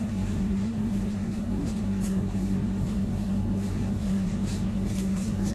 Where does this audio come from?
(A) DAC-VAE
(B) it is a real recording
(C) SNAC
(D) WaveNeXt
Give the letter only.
C